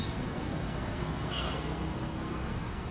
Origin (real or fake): fake